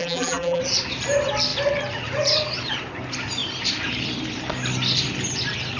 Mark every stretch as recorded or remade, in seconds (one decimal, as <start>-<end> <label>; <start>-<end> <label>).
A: 0.0-0.6 remade; 0.6-5.8 recorded